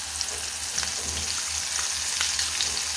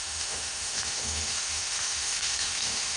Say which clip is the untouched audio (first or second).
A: first